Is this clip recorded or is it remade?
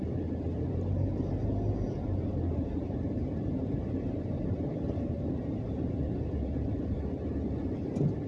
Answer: remade